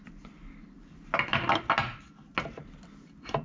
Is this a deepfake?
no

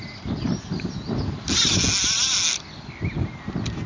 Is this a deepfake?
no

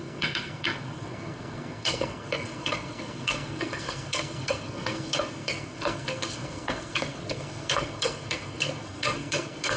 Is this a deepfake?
yes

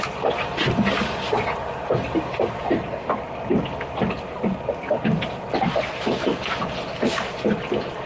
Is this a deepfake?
no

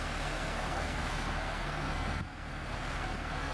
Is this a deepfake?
yes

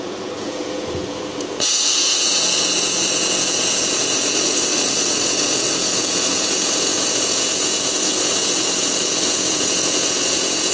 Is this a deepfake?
yes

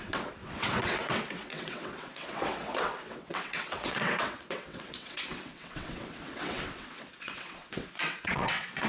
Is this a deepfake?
yes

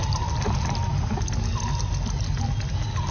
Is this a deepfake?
no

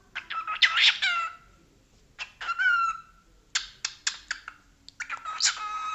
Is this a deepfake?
no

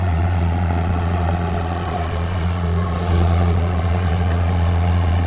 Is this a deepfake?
yes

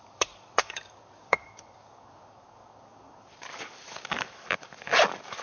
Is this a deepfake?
yes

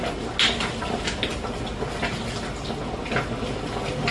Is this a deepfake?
no